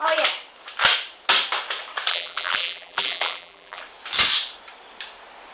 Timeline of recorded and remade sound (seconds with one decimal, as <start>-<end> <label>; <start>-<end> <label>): 0.0-2.1 recorded; 2.1-3.8 remade; 3.8-5.5 recorded